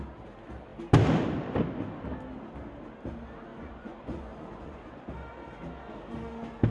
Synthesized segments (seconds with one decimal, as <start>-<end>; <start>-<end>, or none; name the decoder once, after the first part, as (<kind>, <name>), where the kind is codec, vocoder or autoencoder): 3.5-5.0 (vocoder, Vocos)